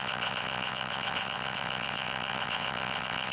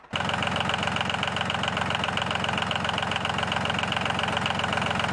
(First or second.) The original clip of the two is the second